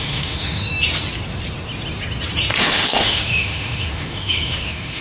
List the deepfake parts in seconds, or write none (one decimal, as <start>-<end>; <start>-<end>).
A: 0.0-0.7; 2.6-5.0